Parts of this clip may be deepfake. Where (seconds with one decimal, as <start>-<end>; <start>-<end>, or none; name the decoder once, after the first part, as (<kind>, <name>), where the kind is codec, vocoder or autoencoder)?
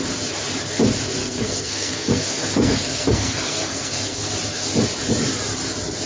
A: 1.2-4.3 (codec, SNAC)